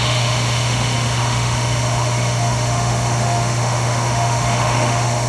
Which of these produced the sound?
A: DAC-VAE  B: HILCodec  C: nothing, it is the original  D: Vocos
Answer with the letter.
A